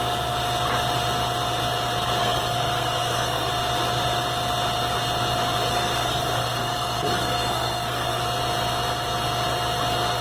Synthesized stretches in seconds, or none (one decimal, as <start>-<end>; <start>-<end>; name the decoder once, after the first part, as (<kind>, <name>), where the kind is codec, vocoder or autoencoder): 2.2-3.5 (codec, SNAC); 5.7-8.2